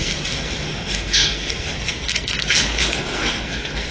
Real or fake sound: fake